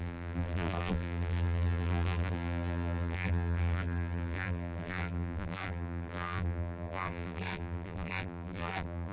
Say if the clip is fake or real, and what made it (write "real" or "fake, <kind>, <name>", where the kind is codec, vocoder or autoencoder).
fake, vocoder, BigVGAN v2